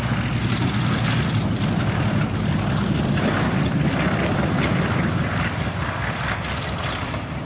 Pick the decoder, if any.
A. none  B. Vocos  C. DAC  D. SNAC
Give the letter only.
A